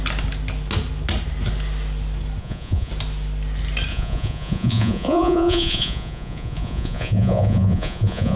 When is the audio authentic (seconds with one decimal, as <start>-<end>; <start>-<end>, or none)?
0.0-2.4; 2.9-3.9